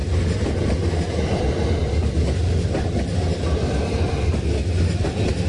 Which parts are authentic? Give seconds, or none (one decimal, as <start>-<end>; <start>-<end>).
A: 0.0-5.5